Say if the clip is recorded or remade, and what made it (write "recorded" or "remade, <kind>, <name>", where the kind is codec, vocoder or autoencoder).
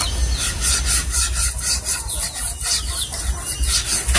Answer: recorded